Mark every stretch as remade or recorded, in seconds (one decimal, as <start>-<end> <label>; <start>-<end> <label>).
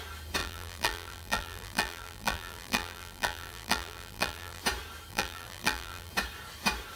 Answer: 0.0-0.4 recorded; 0.4-4.6 remade; 4.6-5.1 recorded; 5.1-6.1 remade; 6.1-7.0 recorded